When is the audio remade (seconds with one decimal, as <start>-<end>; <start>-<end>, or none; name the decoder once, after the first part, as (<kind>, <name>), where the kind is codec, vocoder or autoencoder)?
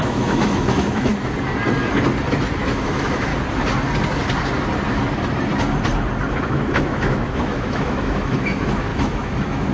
0.0-1.1 (autoencoder, DAC-VAE); 2.6-3.3; 6.3-9.7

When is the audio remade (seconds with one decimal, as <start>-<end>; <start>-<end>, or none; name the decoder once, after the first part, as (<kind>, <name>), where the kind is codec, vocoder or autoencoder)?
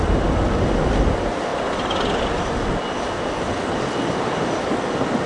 none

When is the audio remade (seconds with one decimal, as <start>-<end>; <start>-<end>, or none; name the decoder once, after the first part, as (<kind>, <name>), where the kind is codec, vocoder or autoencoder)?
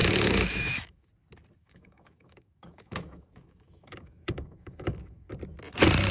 0.0-1.1 (autoencoder, DAC-VAE); 1.6-5.3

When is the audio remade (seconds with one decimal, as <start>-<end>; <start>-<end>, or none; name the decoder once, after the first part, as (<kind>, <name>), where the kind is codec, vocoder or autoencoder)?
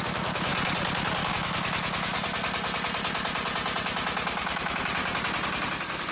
0.0-0.5 (autoencoder, DAC-VAE); 1.3-2.1; 4.4-5.0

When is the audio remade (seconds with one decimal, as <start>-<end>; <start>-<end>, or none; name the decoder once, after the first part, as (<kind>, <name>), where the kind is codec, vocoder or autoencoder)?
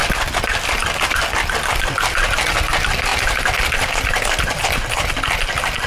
none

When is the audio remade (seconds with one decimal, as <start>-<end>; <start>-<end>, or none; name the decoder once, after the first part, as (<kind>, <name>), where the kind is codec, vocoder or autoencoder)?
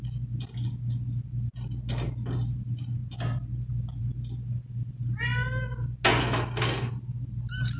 none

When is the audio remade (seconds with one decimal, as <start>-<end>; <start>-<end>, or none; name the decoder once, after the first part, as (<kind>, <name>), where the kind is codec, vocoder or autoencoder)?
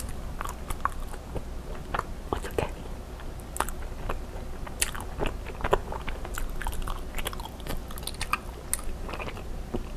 none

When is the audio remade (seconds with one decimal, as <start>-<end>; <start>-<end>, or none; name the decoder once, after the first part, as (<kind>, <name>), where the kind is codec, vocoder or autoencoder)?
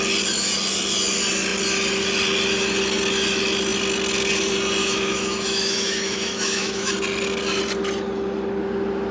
4.8-6.9 (autoencoder, DAC-VAE)